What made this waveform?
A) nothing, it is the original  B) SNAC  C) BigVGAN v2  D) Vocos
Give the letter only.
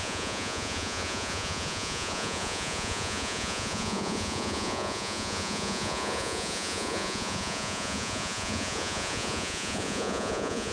D